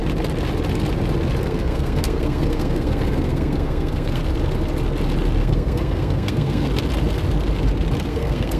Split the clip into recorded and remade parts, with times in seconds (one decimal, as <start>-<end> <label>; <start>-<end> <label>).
0.0-1.4 recorded; 1.4-4.2 remade; 4.2-5.4 recorded; 5.4-6.7 remade; 6.7-8.1 recorded; 8.1-8.6 remade